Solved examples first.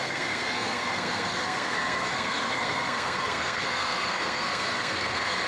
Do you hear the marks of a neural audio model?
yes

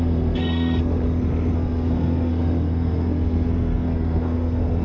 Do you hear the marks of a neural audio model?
yes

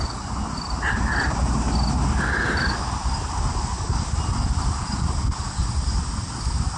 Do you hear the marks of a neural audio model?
no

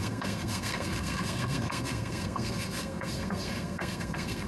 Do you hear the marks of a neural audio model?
yes